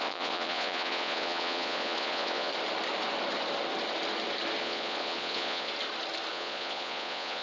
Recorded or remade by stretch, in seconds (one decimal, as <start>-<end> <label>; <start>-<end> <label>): 0.0-2.5 remade; 2.5-4.6 recorded; 4.6-5.7 remade; 5.7-6.3 recorded; 6.3-7.4 remade